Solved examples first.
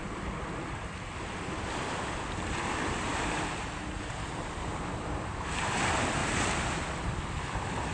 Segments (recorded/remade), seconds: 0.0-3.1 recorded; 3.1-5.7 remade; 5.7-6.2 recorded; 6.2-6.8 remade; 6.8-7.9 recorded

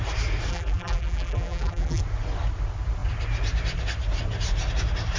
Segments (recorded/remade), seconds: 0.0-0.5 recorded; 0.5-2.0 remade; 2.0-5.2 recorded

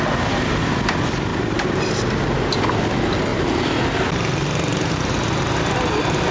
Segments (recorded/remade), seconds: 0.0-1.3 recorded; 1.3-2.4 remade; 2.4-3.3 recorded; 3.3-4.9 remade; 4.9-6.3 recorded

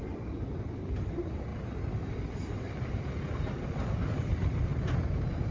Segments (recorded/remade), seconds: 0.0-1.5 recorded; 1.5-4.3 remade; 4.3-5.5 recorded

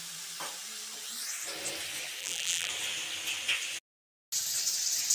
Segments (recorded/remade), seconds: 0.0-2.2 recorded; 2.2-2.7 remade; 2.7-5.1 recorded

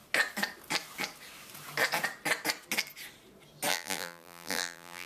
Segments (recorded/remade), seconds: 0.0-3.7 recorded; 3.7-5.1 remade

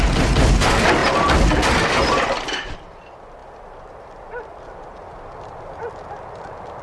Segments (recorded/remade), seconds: 0.0-3.4 recorded; 3.4-5.3 remade; 5.3-6.8 recorded

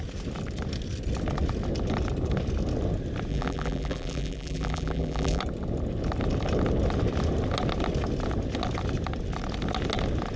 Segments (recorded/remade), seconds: 0.0-3.3 recorded; 3.3-5.4 remade; 5.4-10.4 recorded